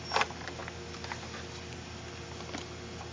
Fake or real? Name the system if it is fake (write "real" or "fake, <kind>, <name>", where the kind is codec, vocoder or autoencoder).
real